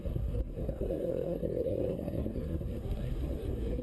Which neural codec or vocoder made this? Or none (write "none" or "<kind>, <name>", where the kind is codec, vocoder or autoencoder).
codec, SNAC